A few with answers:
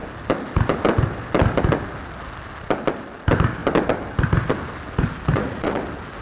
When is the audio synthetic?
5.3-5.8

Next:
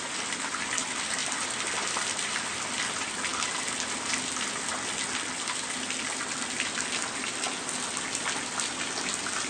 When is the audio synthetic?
none

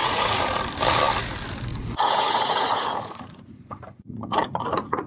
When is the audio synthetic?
0.0-0.6; 1.7-5.1

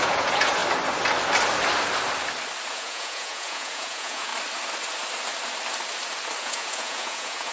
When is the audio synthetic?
0.0-0.6; 2.7-4.3; 6.4-7.5